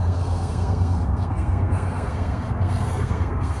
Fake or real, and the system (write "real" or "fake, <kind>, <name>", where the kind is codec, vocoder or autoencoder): fake, codec, SNAC